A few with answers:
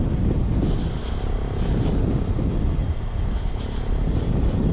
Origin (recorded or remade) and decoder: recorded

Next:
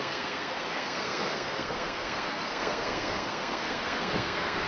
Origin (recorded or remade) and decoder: remade, codec, SNAC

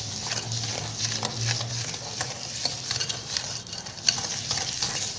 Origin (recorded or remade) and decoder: recorded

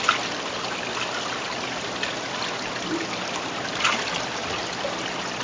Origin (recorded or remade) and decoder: recorded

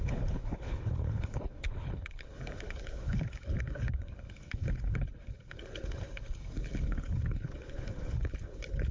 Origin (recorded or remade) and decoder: remade, codec, HILCodec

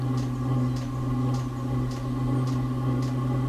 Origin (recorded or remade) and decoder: recorded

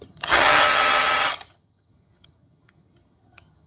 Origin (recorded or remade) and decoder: remade, vocoder, HiFi-GAN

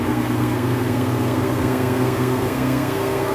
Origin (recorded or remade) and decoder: remade, codec, SNAC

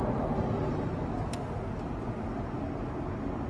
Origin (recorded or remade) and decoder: recorded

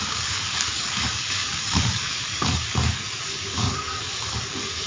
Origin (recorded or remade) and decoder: remade, codec, DAC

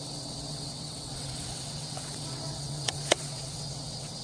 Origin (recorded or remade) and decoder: remade, vocoder, WaveNeXt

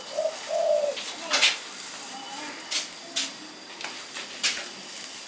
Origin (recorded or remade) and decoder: recorded